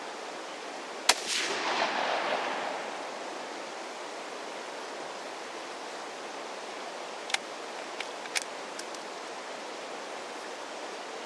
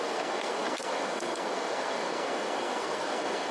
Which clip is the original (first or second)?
first